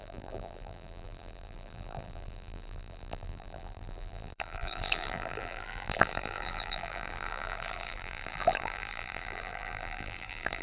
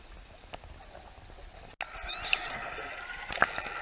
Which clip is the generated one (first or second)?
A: first